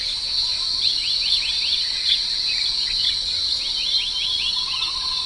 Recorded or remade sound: recorded